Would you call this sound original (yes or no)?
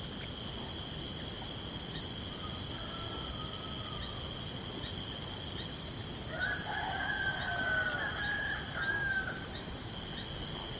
yes